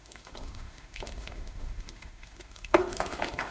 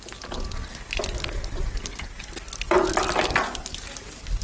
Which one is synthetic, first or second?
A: first